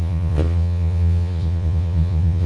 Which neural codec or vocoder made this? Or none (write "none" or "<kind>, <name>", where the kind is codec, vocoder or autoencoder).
vocoder, Vocos